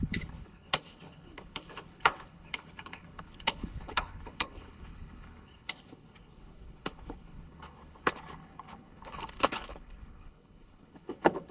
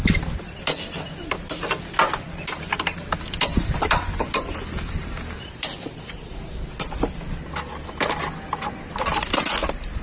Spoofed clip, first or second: first